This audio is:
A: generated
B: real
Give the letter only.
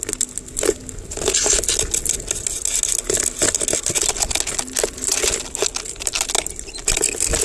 B